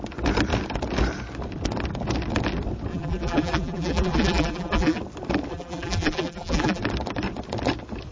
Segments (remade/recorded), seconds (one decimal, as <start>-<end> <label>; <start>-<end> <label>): 0.0-2.9 recorded; 2.9-5.0 remade; 5.0-5.5 recorded; 5.5-6.8 remade; 6.8-8.1 recorded